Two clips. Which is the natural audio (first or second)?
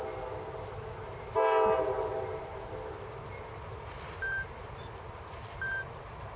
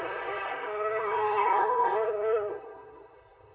first